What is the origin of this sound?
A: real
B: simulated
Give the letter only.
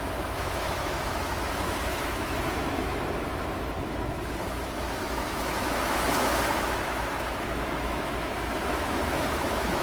B